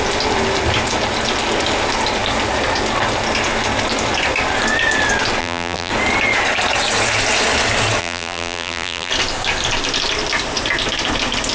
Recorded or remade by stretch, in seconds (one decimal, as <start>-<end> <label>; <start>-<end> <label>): 0.0-5.4 recorded; 5.4-5.9 remade; 5.9-8.0 recorded; 8.0-9.1 remade; 9.1-11.5 recorded